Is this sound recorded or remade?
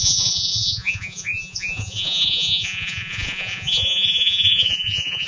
remade